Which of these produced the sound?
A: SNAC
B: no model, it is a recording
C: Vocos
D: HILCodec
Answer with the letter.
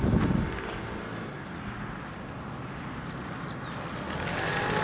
B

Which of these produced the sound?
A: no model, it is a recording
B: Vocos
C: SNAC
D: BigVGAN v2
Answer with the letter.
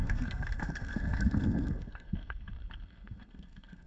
C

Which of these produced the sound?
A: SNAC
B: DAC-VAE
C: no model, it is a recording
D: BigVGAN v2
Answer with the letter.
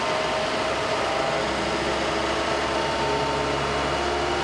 C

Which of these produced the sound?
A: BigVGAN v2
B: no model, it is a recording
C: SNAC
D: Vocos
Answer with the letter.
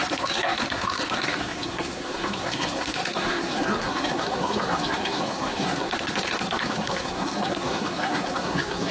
C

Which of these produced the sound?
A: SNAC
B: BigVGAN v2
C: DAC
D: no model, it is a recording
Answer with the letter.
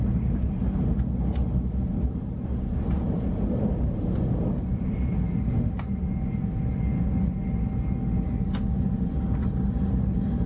D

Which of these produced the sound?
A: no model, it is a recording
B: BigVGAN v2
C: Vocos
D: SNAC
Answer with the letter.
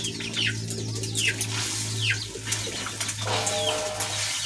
A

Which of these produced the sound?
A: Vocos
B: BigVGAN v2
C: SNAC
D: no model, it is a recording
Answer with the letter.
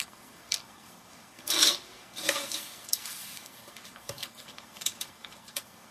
C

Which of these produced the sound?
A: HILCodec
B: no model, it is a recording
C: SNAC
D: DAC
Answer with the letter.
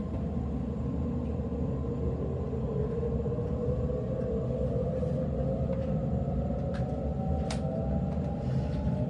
B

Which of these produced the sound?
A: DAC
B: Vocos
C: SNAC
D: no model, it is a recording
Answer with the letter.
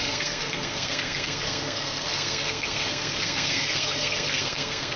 C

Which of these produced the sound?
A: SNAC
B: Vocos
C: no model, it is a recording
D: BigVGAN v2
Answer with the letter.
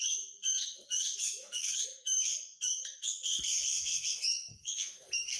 A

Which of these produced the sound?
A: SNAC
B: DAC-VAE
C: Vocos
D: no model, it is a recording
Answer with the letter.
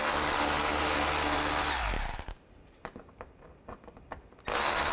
D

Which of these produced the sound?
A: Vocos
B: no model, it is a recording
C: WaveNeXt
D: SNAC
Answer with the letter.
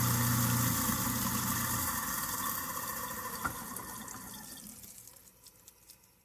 B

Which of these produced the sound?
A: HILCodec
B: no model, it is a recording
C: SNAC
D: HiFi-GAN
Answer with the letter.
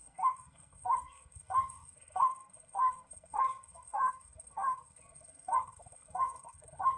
C